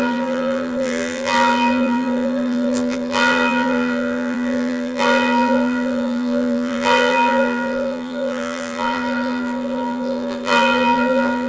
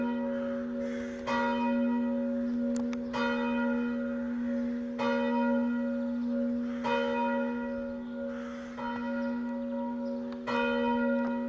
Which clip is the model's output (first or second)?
first